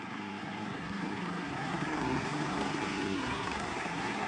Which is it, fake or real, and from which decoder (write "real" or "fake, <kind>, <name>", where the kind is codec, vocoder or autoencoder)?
fake, codec, SNAC